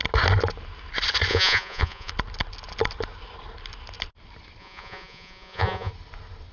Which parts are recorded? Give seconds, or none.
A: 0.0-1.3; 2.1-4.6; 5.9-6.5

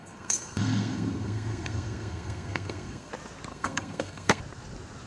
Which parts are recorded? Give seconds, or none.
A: 3.1-3.5; 4.4-5.1

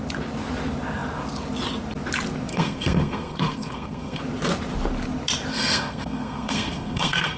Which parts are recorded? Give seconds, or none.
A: 0.0-2.5; 4.2-5.5

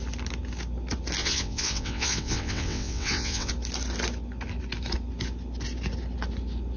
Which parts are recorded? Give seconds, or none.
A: 0.0-1.2; 3.5-6.8

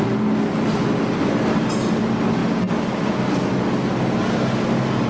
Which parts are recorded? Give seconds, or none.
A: 0.0-5.1